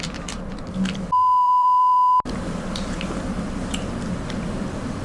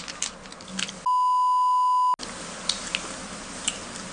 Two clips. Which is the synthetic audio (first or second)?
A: first